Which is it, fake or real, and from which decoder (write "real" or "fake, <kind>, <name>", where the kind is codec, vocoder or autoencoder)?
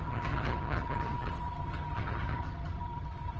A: fake, vocoder, HiFi-GAN